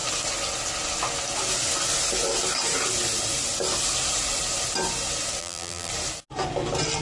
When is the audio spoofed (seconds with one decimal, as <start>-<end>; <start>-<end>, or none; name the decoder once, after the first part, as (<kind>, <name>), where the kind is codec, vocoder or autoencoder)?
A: 5.4-5.9 (vocoder, BigVGAN v2)